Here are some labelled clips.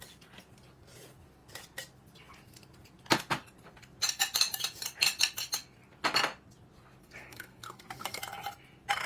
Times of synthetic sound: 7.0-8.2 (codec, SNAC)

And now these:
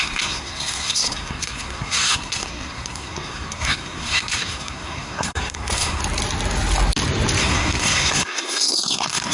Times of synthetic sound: 0.0-6.0 (codec, SNAC); 7.4-9.3

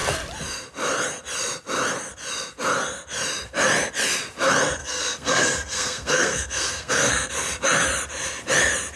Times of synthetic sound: 4.8-7.3 (codec, SNAC)